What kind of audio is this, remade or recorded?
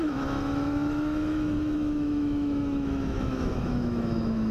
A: remade